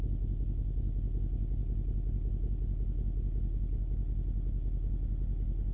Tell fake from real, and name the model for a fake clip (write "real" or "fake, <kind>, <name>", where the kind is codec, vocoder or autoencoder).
real